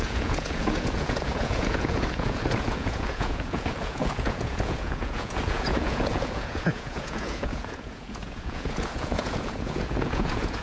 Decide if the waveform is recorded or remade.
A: remade